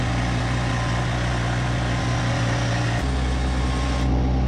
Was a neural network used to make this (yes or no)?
no